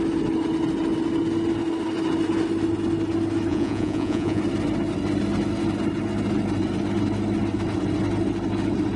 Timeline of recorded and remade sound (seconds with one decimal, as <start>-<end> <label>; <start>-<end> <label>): 0.0-3.5 recorded; 3.5-4.4 remade; 4.4-9.0 recorded